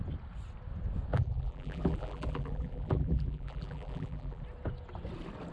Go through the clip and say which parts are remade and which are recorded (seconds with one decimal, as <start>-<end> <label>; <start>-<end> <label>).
0.0-1.1 recorded; 1.1-4.4 remade; 4.4-5.5 recorded